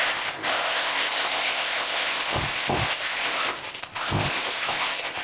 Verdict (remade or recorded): remade